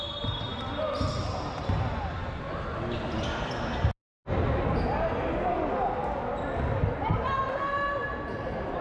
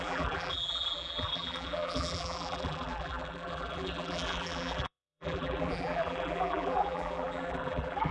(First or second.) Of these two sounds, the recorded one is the first